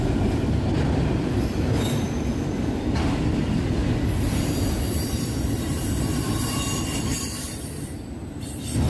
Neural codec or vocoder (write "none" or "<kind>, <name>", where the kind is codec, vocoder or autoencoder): vocoder, BigVGAN v2